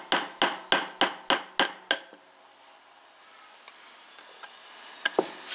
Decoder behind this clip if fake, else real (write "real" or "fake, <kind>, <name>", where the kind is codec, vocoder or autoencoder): real